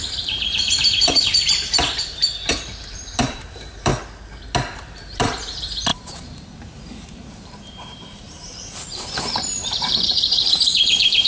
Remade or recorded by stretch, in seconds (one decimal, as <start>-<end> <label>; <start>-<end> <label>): 0.0-3.9 remade; 3.9-4.7 recorded; 4.7-11.3 remade